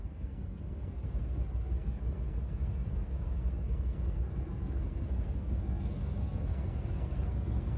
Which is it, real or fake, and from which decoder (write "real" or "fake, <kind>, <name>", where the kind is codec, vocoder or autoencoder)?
fake, codec, SNAC